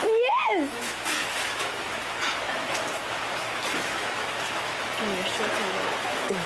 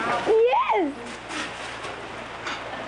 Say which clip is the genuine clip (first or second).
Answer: second